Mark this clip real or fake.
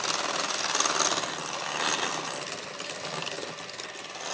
real